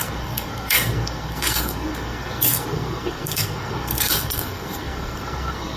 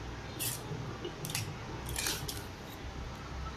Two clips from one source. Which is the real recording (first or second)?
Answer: second